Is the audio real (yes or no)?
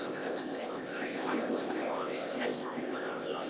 no